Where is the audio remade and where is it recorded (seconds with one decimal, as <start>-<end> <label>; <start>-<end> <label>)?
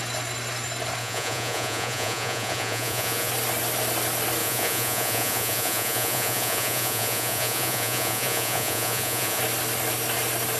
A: 0.0-1.0 recorded; 1.0-3.3 remade; 3.3-4.4 recorded; 4.4-9.4 remade; 9.4-10.6 recorded